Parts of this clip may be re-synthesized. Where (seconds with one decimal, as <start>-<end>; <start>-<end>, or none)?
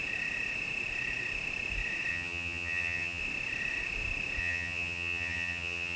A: 2.1-3.2; 4.4-6.0